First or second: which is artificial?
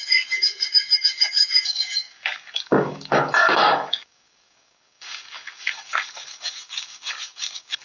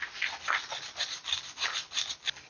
first